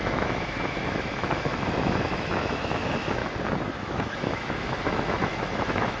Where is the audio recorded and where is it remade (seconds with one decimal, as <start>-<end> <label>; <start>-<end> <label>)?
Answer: 0.0-3.2 remade; 3.2-3.8 recorded; 3.8-6.0 remade